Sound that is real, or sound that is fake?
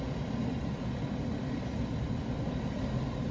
real